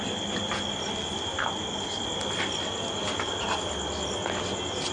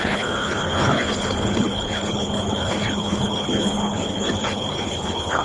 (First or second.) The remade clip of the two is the second